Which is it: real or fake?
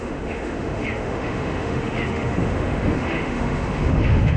fake